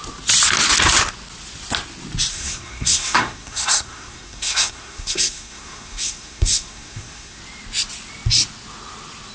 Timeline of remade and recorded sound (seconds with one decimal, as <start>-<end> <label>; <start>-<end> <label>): 0.0-2.3 recorded; 2.3-7.4 remade; 7.4-9.3 recorded